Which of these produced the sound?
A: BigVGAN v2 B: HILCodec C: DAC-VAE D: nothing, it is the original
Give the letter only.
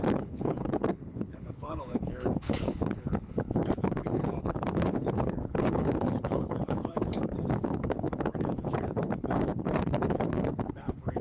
B